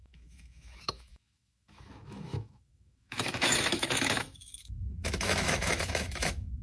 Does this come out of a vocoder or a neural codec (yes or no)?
yes